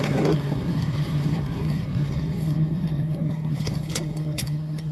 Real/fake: fake